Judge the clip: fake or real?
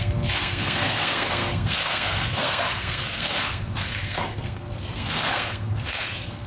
fake